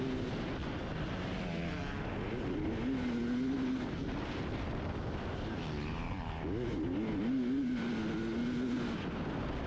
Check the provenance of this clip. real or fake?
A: real